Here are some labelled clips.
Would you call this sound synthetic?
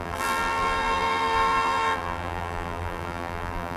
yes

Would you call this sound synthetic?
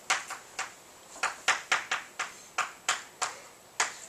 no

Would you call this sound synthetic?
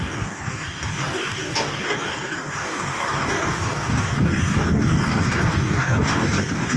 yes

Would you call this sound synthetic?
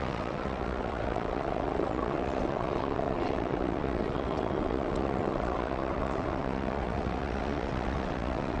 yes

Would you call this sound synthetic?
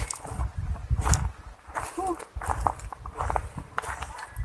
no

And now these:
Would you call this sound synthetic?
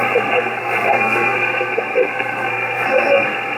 yes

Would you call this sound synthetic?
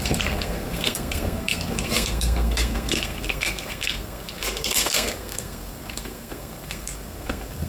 yes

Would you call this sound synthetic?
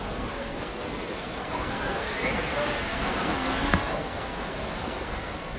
yes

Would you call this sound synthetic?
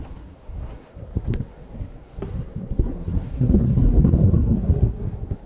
yes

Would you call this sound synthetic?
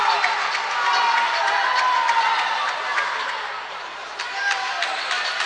no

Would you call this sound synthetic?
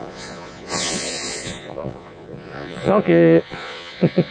yes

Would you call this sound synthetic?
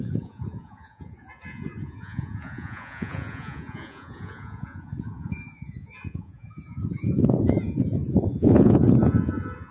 yes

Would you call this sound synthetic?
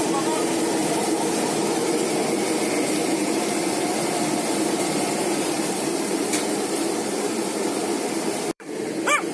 yes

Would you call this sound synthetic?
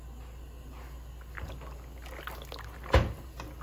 no